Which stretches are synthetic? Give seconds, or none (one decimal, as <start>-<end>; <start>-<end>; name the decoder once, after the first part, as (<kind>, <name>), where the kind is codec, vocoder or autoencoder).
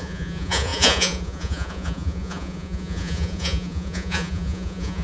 0.0-5.0 (vocoder, Vocos)